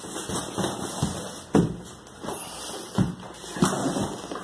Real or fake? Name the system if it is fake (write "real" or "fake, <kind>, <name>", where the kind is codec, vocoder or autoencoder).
real